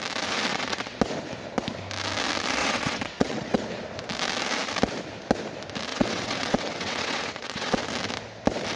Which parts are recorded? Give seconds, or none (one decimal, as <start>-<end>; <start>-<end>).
0.0-0.5; 1.0-2.6; 3.6-5.9; 7.8-8.8